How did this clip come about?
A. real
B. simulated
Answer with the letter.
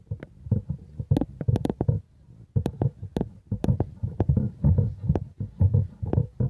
A